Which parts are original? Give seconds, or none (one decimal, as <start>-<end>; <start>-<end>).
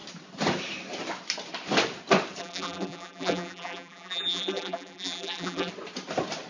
0.0-2.4; 5.7-6.5